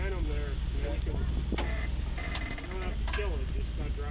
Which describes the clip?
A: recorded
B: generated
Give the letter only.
A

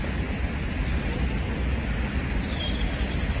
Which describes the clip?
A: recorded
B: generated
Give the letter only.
A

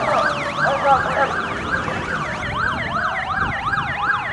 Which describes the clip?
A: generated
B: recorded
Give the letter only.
B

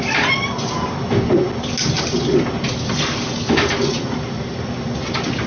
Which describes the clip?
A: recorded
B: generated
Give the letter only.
A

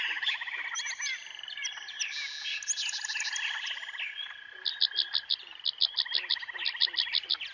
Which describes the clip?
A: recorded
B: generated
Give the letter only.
A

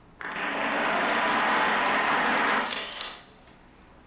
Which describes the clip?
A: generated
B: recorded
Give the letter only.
B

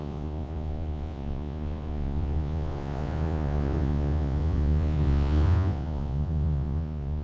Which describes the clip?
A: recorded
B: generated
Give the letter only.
B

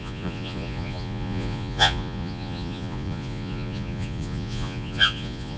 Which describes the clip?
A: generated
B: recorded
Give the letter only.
A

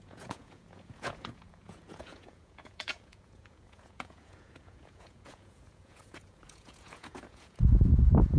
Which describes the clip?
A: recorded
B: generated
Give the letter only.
B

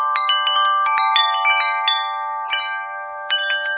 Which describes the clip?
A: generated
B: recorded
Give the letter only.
B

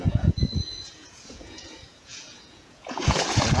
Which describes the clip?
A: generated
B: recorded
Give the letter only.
A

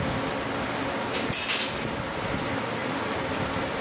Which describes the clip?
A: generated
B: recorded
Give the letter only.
B